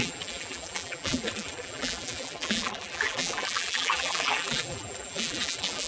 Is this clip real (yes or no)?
no